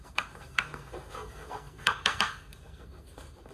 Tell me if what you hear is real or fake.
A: fake